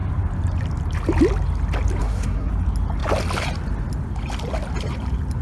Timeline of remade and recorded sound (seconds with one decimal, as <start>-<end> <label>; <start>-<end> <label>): 0.0-2.0 recorded; 2.0-2.5 remade; 2.5-5.4 recorded